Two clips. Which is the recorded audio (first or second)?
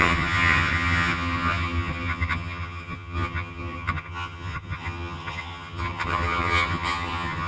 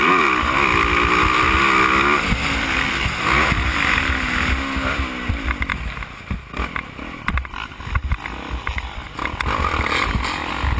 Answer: second